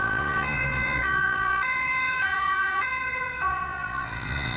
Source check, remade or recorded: remade